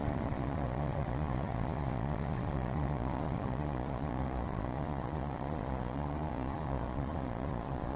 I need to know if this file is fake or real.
fake